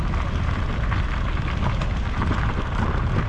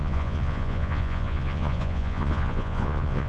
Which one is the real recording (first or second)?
first